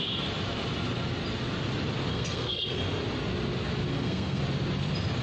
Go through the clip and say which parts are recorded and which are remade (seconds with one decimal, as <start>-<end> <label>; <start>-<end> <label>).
0.0-2.1 recorded; 2.1-2.8 remade; 2.8-3.9 recorded; 3.9-4.4 remade; 4.4-5.2 recorded